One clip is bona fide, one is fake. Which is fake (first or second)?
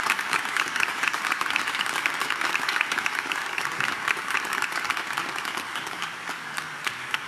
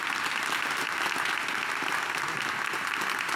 first